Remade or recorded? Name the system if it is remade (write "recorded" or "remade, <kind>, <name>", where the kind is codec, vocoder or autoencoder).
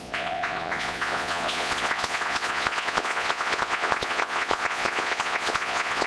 remade, vocoder, Vocos